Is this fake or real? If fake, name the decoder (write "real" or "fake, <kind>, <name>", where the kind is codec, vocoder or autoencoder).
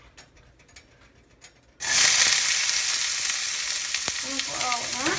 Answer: real